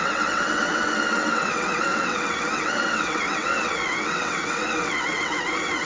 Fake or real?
fake